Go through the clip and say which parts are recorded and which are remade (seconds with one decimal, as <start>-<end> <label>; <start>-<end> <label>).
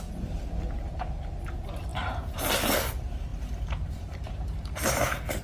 0.0-1.9 recorded; 1.9-2.4 remade; 2.4-3.3 recorded; 3.3-4.7 remade; 4.7-5.4 recorded